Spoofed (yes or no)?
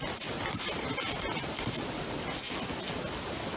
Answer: no